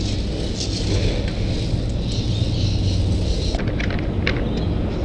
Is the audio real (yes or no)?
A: yes